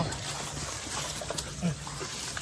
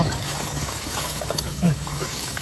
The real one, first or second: first